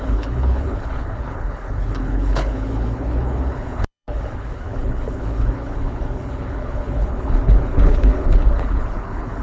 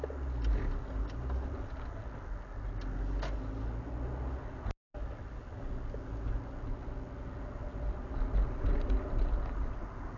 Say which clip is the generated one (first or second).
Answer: first